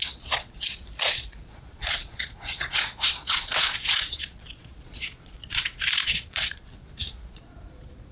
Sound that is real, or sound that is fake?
fake